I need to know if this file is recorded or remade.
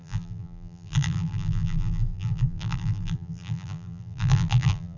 remade